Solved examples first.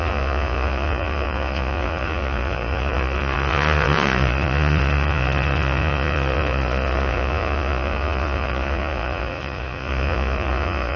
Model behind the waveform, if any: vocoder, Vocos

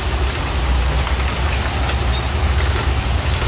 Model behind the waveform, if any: none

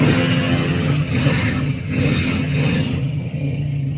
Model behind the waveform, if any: vocoder, HiFi-GAN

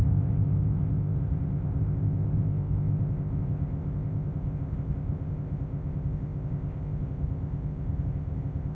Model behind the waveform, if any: codec, ZipCodec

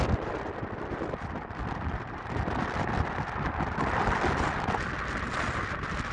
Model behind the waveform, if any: none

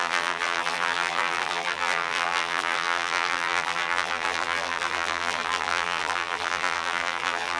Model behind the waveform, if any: vocoder, BigVGAN v2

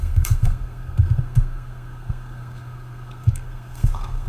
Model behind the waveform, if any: codec, SNAC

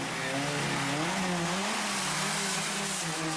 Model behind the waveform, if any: none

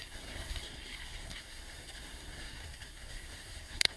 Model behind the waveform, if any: codec, SNAC